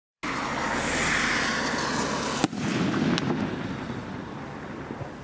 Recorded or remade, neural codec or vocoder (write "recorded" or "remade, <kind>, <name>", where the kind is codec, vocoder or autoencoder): recorded